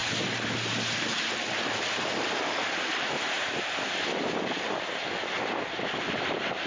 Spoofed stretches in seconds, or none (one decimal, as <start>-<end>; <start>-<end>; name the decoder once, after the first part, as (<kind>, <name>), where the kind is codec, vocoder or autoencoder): none